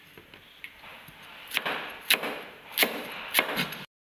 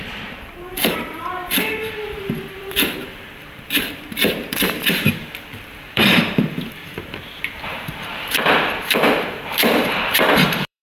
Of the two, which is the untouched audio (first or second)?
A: first